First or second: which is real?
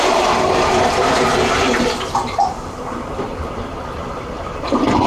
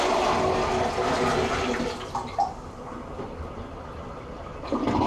second